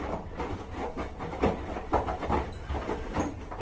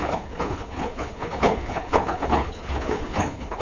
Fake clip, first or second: second